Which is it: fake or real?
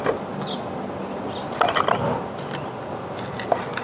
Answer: real